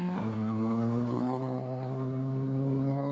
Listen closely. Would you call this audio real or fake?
fake